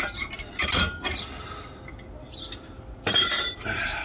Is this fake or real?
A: real